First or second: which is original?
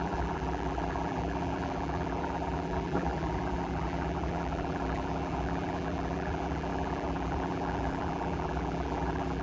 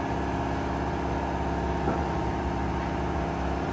second